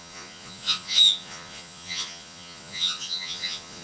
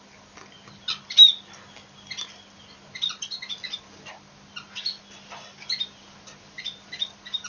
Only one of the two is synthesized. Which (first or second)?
first